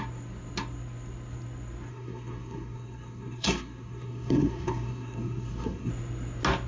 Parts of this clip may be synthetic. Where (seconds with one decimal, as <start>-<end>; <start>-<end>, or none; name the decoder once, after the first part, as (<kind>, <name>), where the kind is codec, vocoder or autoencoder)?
1.9-5.9 (codec, SNAC)